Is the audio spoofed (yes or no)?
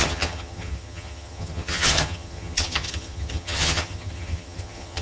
yes